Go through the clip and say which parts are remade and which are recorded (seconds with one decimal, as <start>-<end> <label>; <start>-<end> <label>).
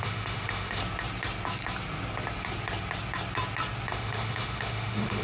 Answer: 0.0-0.8 remade; 0.8-3.9 recorded; 3.9-5.2 remade